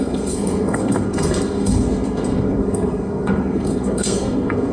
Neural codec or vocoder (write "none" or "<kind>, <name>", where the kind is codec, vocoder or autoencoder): codec, SNAC